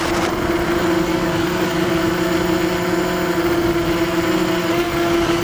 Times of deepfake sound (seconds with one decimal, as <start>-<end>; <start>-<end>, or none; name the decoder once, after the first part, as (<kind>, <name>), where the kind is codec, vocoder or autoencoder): 1.1-2.0 (codec, DAC); 4.6-5.4

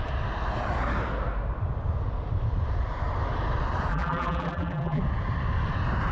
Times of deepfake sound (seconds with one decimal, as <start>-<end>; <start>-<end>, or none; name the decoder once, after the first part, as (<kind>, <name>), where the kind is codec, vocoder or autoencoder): 3.9-5.0 (vocoder, BigVGAN v2)

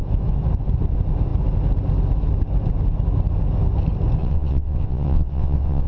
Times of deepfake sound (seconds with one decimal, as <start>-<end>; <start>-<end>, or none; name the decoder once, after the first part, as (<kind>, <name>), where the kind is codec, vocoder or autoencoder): 4.2-5.9 (vocoder, WaveNeXt)

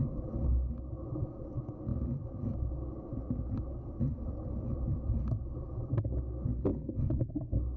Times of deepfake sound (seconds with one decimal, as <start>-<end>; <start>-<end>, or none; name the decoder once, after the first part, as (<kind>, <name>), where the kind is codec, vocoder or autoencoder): 1.9-2.5 (vocoder, BigVGAN v2); 3.1-6.0

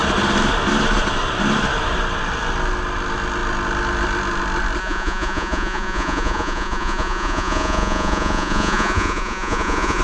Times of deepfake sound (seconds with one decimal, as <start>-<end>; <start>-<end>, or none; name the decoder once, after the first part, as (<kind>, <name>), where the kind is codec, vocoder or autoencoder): 4.8-10.0 (vocoder, Vocos)

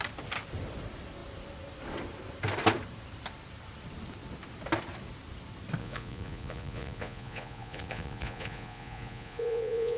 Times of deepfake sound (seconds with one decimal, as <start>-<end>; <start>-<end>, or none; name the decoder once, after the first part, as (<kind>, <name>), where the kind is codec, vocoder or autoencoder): 5.8-10.0 (vocoder, Vocos)

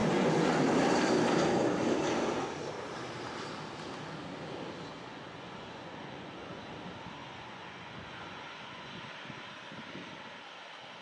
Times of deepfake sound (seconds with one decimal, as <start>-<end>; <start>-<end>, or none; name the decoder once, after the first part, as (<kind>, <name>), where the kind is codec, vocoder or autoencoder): 0.0-0.6 (vocoder, Vocos); 5.1-6.6; 7.2-9.1